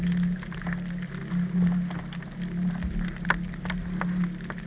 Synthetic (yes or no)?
no